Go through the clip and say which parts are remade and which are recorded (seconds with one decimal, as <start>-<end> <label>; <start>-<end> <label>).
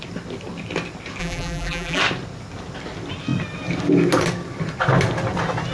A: 0.0-1.2 recorded; 1.2-2.0 remade; 2.0-5.7 recorded